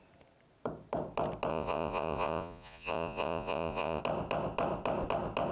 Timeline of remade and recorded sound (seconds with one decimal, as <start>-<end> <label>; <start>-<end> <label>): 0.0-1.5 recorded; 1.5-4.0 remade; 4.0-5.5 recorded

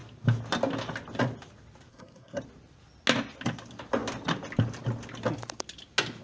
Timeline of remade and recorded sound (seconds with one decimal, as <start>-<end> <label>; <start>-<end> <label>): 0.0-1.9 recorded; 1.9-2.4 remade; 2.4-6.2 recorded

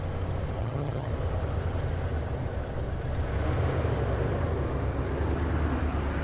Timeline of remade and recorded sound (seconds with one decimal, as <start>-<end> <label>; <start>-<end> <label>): 0.0-0.6 recorded; 0.6-1.1 remade; 1.1-6.2 recorded

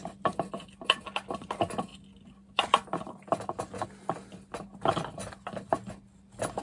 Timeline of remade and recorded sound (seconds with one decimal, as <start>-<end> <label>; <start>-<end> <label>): 0.0-6.6 recorded

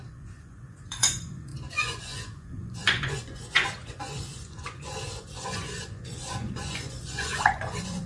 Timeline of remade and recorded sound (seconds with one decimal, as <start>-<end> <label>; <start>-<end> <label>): 0.0-8.1 remade

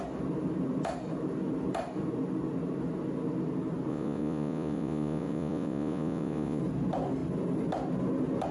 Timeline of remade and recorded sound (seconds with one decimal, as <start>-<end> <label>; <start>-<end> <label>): 0.0-3.9 recorded; 3.9-6.6 remade; 6.6-8.5 recorded

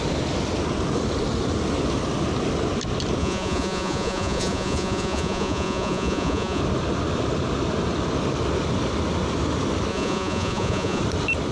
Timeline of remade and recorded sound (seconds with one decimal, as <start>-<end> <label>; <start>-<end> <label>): 0.0-3.2 recorded; 3.2-6.6 remade; 6.6-9.9 recorded; 9.9-11.0 remade; 11.0-11.5 recorded

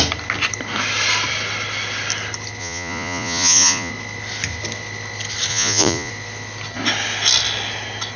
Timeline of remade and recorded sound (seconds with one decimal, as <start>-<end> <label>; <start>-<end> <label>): 0.0-2.6 recorded; 2.6-3.9 remade; 3.9-5.5 recorded; 5.5-6.1 remade; 6.1-8.2 recorded